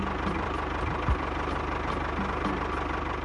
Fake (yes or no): no